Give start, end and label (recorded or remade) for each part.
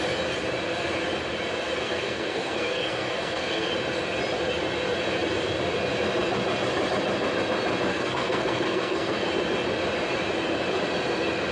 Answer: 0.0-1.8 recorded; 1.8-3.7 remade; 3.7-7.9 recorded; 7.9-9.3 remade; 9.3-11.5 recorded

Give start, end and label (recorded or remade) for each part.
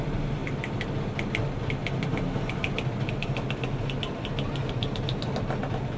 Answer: 0.0-6.0 recorded